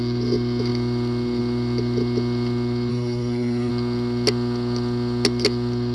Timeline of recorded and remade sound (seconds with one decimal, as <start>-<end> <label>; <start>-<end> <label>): 0.0-2.9 recorded; 2.9-3.7 remade; 3.7-5.9 recorded